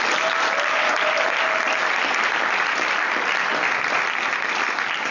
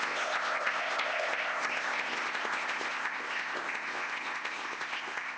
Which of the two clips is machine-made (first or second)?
second